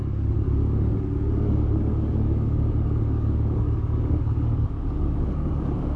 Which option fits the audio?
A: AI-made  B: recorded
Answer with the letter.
A